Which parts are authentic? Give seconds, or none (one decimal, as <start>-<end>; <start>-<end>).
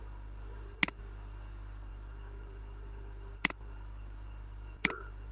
1.0-1.9